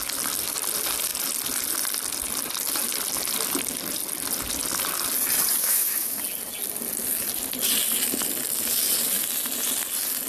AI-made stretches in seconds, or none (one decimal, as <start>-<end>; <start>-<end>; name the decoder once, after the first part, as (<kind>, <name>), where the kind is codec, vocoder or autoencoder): 5.6-6.2 (autoencoder, DAC-VAE)